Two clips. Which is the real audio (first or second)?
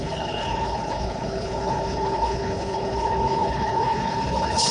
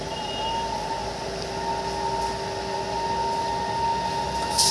second